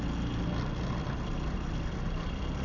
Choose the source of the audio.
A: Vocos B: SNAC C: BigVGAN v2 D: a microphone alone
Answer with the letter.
D